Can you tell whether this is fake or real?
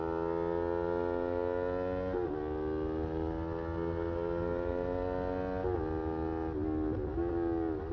real